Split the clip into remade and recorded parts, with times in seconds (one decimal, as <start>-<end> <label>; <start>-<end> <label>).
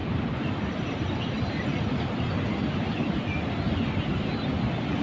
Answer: 0.0-5.0 recorded